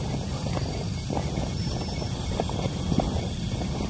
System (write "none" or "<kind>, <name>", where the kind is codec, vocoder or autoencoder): none